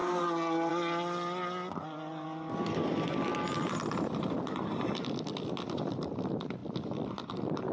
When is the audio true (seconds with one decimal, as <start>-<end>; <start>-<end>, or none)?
0.0-0.7; 3.3-4.3